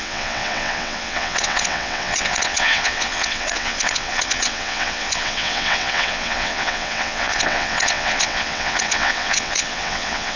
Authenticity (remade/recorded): remade